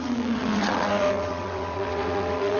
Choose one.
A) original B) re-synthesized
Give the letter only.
B